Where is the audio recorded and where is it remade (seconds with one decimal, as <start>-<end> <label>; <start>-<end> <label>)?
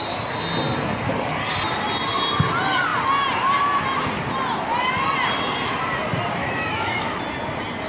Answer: 0.0-6.4 recorded; 6.4-7.2 remade; 7.2-7.9 recorded